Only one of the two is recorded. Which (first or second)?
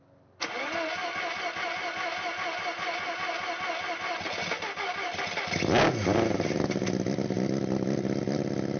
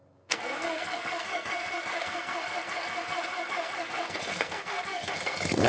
first